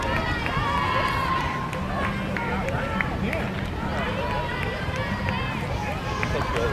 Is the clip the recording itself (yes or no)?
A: yes